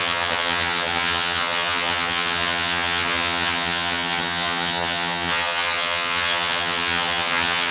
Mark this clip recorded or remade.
remade